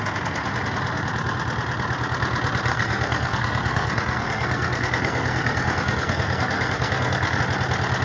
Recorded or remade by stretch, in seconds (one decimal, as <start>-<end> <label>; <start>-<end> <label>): 0.0-2.7 recorded; 2.7-7.4 remade; 7.4-8.0 recorded